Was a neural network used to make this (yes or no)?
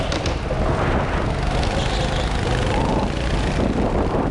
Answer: no